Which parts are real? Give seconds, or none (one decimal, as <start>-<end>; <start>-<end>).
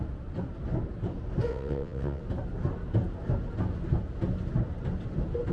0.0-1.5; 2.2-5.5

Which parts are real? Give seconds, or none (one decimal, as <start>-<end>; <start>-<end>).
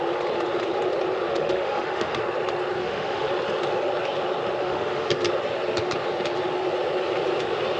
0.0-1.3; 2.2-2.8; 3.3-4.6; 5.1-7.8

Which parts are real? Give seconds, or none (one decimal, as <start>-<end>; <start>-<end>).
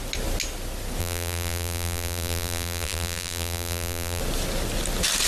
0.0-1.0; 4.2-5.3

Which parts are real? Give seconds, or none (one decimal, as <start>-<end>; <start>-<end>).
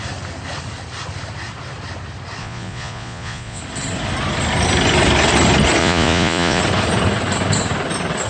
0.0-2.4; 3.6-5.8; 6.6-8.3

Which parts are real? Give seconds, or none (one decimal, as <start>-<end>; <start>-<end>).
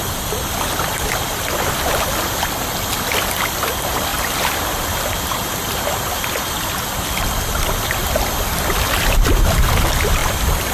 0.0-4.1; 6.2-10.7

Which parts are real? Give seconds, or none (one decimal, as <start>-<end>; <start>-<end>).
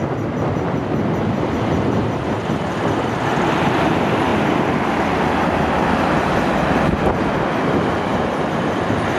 0.0-9.2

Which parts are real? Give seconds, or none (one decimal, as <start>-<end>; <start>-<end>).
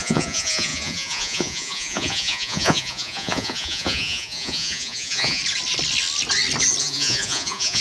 5.4-6.8